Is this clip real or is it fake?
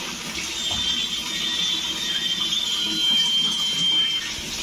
real